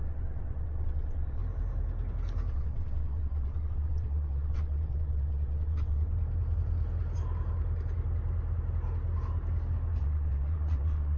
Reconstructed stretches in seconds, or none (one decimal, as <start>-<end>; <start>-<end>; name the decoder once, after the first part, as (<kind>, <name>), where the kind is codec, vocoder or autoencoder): 0.0-1.4 (vocoder, WaveNeXt); 2.5-6.1; 10.0-11.2